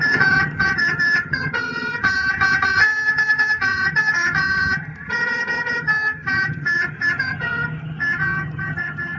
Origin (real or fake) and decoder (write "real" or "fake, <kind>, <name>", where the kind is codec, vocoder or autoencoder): fake, vocoder, HiFi-GAN